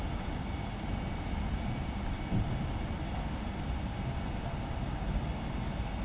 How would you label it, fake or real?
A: real